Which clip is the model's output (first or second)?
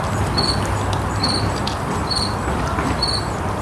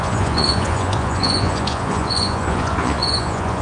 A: second